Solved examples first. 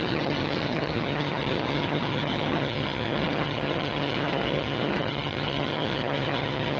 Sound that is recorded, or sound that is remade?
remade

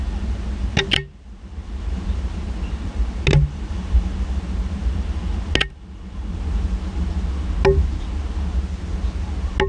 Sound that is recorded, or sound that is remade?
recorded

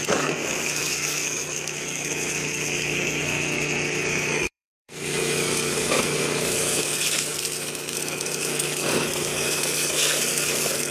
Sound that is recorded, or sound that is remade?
remade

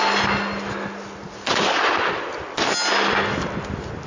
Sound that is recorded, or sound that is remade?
recorded